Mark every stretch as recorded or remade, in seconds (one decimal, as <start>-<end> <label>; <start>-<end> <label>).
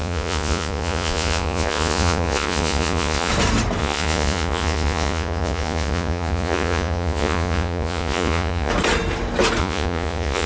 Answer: 0.0-3.3 remade; 3.3-3.8 recorded; 3.8-8.7 remade; 8.7-9.6 recorded; 9.6-10.5 remade